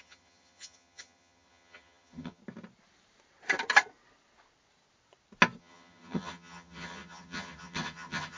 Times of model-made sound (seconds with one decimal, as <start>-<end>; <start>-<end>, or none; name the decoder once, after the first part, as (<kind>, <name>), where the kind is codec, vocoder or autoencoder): 0.0-2.4 (vocoder, HiFi-GAN); 5.6-8.4